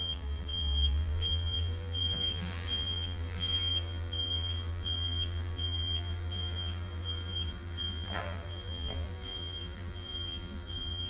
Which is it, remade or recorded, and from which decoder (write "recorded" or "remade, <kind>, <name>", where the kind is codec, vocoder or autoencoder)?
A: remade, vocoder, BigVGAN v2